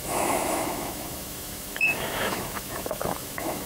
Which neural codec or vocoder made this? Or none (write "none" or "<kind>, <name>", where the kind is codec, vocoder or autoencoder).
autoencoder, DAC-VAE